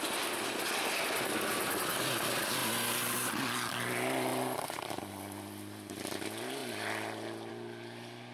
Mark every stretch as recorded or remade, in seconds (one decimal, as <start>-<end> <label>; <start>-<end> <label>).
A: 0.0-8.3 recorded